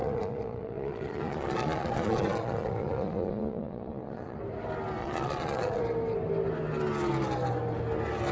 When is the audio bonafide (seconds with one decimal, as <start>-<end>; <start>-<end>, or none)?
4.4-5.0; 5.8-8.3